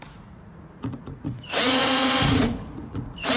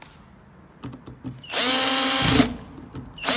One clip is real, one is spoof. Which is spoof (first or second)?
first